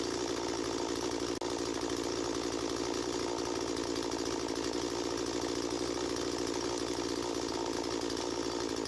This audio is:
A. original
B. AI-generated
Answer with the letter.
A